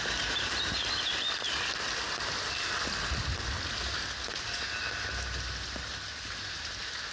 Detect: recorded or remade recorded